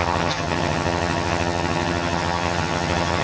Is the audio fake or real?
fake